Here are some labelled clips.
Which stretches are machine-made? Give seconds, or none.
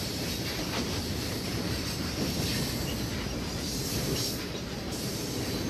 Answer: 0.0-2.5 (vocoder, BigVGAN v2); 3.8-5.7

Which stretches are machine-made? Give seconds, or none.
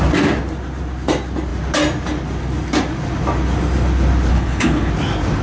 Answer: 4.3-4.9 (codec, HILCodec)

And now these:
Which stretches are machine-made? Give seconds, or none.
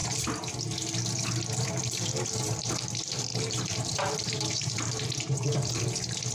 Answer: 1.7-6.3 (vocoder, BigVGAN v2)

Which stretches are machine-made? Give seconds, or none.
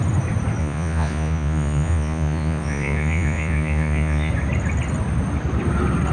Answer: 0.6-4.3 (vocoder, Vocos)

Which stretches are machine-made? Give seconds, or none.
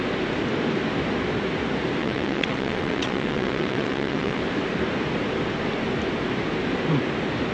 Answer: 2.0-4.4 (vocoder, WaveNeXt)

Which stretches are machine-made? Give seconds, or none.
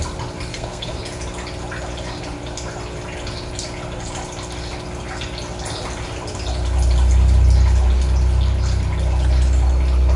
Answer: 0.5-1.0 (codec, SNAC)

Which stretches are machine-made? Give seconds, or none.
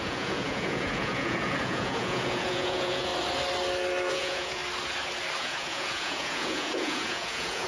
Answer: 0.0-3.1 (vocoder, Vocos); 4.1-4.6; 5.4-7.7